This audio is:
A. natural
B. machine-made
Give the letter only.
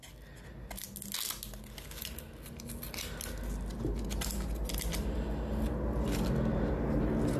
A